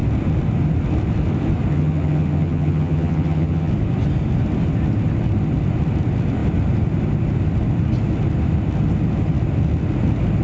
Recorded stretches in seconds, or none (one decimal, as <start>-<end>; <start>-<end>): 0.0-1.7; 3.7-10.4

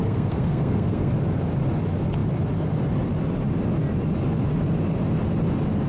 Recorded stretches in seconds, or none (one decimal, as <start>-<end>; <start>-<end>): 1.1-5.9